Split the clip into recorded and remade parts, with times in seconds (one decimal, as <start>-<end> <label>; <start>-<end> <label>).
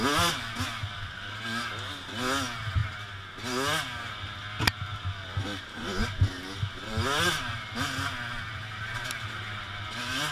0.0-10.3 recorded